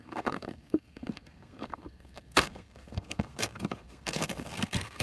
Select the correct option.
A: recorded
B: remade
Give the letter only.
B